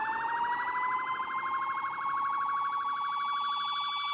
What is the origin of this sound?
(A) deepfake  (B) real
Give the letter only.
B